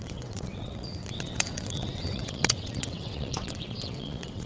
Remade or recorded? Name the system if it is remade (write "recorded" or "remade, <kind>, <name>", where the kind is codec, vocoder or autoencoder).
remade, vocoder, WaveNeXt